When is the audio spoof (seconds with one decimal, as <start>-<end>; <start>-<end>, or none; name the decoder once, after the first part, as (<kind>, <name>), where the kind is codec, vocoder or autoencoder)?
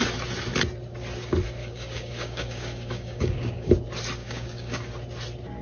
1.6-3.7 (codec, DAC); 4.2-4.9